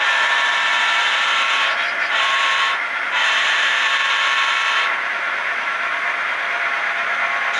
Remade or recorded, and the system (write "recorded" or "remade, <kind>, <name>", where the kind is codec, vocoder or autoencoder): remade, vocoder, BigVGAN v2